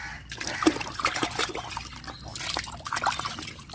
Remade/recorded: recorded